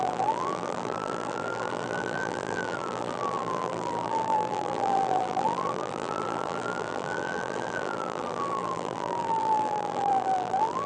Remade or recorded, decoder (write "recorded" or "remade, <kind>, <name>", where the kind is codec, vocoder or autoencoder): remade, vocoder, BigVGAN v2